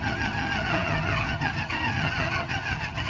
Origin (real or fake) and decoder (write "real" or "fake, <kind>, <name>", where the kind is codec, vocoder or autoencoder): fake, vocoder, HiFi-GAN